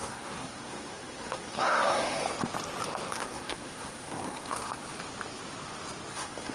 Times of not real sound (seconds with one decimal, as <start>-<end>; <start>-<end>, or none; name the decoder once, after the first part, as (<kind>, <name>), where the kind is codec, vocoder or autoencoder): 0.0-2.2 (codec, SNAC); 3.1-4.8; 6.1-6.5